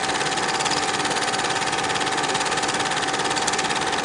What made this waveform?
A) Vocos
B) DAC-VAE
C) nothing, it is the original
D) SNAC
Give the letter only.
C